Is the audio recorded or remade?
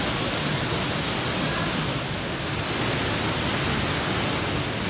recorded